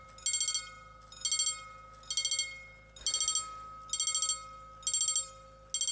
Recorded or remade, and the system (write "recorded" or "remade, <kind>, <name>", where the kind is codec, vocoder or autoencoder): recorded